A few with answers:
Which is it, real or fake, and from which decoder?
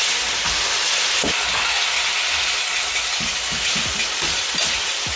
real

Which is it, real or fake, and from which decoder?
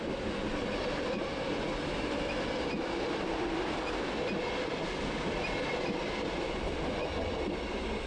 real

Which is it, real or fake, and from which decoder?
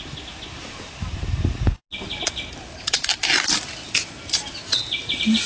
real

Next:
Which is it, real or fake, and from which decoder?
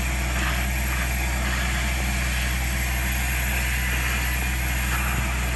real